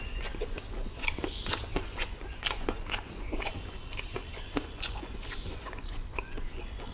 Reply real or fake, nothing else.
fake